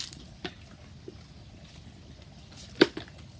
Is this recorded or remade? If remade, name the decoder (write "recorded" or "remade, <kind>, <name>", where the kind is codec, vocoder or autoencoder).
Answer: recorded